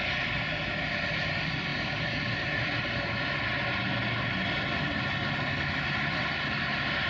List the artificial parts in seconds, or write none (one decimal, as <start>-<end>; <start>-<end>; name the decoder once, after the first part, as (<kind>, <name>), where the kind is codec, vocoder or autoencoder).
none